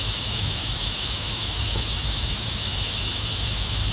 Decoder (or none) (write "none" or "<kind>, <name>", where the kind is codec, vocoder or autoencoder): autoencoder, DAC-VAE